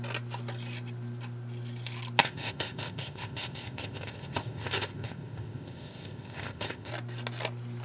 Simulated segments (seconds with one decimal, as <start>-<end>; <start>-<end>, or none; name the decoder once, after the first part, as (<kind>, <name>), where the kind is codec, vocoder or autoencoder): 2.2-6.9 (codec, ZipCodec)